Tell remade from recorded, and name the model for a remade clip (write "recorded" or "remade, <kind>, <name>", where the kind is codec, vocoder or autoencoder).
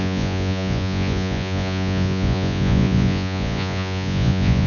remade, vocoder, Vocos